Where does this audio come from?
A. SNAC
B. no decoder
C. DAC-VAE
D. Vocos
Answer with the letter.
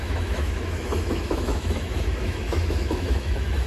C